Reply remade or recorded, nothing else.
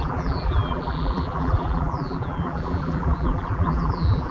remade